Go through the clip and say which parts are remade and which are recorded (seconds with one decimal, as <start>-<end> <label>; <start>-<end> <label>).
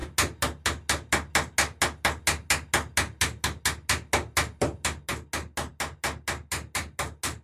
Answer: 0.0-7.4 recorded